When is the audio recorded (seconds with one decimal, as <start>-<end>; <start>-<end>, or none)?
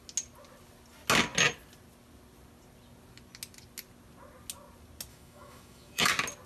0.0-5.1; 6.1-6.5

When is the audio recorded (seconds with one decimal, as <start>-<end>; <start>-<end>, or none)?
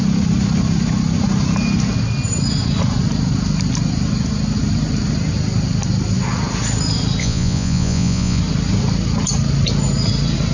0.0-7.2; 8.4-10.5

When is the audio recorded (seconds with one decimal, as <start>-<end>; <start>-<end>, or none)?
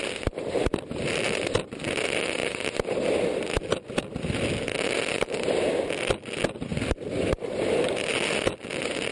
0.0-9.1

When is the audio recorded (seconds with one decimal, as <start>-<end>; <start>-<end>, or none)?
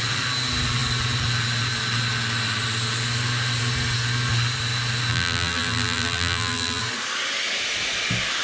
0.0-5.1; 6.8-8.4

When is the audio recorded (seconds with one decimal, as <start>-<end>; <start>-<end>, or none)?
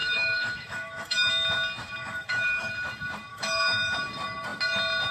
1.3-2.0; 2.7-3.3; 3.9-5.1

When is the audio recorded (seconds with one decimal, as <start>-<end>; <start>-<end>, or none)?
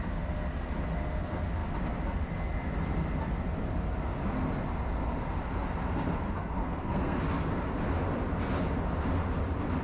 0.0-6.6; 7.2-9.8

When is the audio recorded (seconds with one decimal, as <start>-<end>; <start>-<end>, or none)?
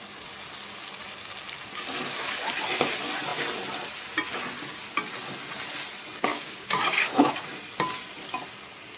0.0-6.3; 7.3-9.0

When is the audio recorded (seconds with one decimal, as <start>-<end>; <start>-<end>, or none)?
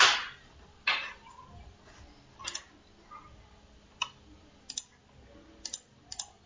0.0-6.5